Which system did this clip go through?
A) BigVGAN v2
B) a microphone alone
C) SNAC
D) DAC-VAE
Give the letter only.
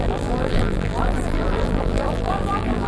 A